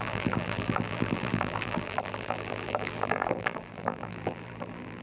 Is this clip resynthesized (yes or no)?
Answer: yes